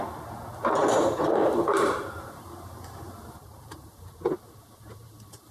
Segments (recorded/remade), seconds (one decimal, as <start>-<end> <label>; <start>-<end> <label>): 0.0-0.8 recorded; 0.8-4.1 remade; 4.1-5.5 recorded

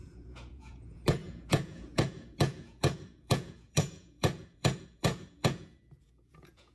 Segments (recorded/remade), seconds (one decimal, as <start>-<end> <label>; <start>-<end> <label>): 0.0-6.7 remade

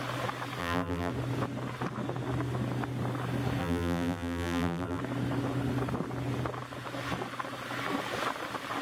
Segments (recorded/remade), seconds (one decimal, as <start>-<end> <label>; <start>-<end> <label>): 0.0-0.6 recorded; 0.6-1.1 remade; 1.1-3.6 recorded; 3.6-5.0 remade; 5.0-8.8 recorded

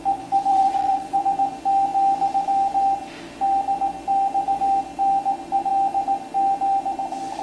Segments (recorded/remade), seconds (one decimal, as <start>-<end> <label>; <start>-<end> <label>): 0.0-0.5 recorded; 0.5-1.2 remade; 1.2-7.4 recorded

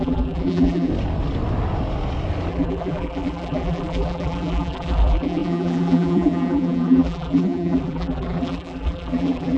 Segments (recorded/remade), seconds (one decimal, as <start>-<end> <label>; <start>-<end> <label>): 0.0-0.9 remade; 0.9-2.5 recorded; 2.5-9.6 remade